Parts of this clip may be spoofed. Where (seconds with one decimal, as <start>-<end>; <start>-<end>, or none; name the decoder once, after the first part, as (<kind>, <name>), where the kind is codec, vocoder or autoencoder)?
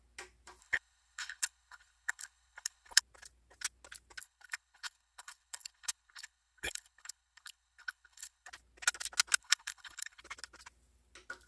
0.6-3.0 (codec, HILCodec); 4.2-8.5; 9.4-10.2